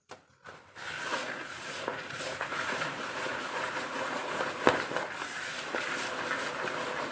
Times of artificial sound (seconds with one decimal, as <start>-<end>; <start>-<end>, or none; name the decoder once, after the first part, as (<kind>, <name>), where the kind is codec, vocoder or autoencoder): 1.1-4.5 (vocoder, Vocos)